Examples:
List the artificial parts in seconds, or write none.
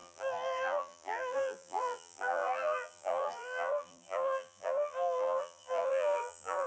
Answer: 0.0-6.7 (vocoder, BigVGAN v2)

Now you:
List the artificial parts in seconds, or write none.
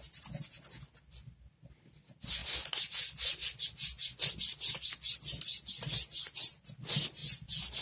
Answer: none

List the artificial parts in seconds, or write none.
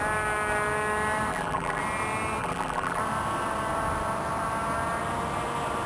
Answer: 1.3-1.8 (vocoder, BigVGAN v2); 2.4-3.0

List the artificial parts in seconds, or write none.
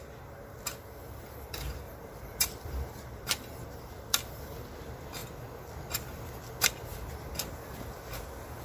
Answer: 1.0-4.4 (vocoder, BigVGAN v2)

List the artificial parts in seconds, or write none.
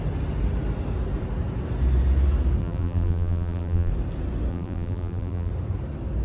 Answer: 2.6-3.9 (vocoder, BigVGAN v2); 4.5-5.5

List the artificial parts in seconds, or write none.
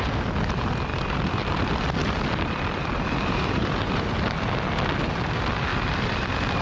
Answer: 0.9-4.0 (vocoder, BigVGAN v2)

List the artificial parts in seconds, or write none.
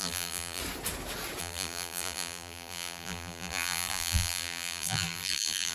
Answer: 0.0-0.6 (vocoder, BigVGAN v2); 1.4-5.7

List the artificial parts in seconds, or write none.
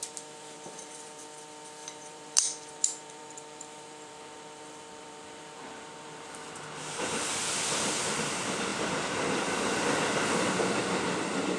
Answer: 0.0-1.2 (vocoder, BigVGAN v2); 1.8-6.3